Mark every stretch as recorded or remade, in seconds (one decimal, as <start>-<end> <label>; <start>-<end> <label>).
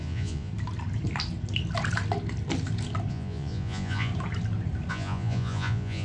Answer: 0.0-0.5 remade; 0.5-3.1 recorded; 3.1-4.1 remade; 4.1-4.9 recorded; 4.9-6.0 remade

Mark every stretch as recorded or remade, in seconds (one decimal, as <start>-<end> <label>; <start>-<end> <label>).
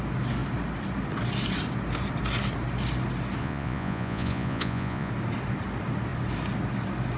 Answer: 0.0-3.4 recorded; 3.4-5.1 remade; 5.1-7.2 recorded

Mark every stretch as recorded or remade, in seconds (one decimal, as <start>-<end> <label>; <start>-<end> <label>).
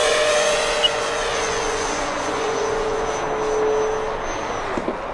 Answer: 0.0-3.1 remade; 3.1-5.1 recorded